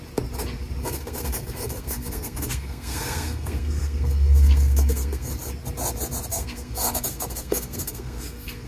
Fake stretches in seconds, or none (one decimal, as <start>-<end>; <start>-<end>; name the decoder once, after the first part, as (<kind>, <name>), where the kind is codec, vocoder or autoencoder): 0.8-5.3 (codec, SNAC); 6.3-8.7